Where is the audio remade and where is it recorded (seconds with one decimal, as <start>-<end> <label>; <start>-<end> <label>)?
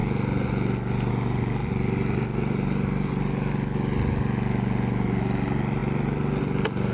0.0-6.9 recorded